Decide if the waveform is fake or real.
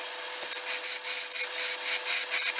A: real